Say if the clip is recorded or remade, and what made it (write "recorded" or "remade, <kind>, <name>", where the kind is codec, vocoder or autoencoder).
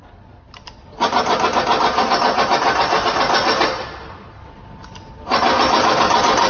recorded